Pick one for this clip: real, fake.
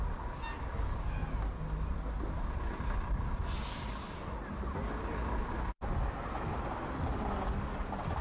real